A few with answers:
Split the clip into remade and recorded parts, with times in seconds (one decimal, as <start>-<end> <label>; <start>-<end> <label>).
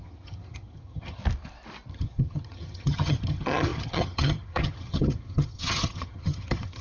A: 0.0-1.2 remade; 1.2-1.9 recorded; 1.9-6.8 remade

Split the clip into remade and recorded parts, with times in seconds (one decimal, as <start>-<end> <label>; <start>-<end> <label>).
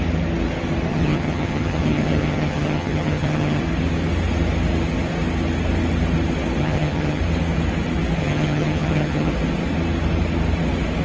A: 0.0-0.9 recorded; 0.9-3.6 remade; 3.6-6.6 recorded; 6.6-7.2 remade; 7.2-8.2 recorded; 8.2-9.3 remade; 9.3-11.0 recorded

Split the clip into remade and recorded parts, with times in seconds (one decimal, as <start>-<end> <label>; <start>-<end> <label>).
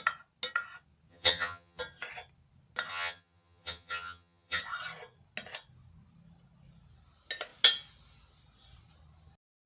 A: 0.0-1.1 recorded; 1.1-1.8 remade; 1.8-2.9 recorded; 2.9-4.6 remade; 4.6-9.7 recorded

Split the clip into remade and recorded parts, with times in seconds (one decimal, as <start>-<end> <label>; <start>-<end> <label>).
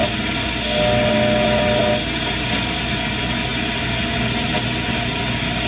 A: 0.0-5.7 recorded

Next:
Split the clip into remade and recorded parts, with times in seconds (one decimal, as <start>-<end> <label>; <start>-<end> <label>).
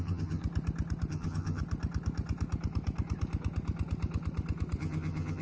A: 0.0-0.4 remade; 0.4-1.1 recorded; 1.1-1.6 remade; 1.6-4.8 recorded; 4.8-5.4 remade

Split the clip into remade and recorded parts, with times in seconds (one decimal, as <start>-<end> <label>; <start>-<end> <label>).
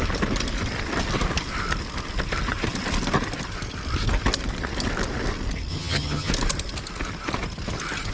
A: 0.0-5.7 recorded; 5.7-6.3 remade; 6.3-8.1 recorded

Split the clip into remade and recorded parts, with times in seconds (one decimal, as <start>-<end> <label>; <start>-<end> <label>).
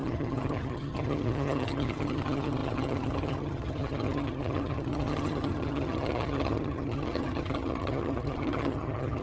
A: 0.0-9.2 remade